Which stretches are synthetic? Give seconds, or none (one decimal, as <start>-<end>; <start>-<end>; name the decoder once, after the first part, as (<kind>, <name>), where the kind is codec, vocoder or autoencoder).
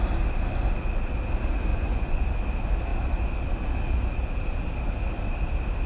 1.7-2.2 (vocoder, Vocos)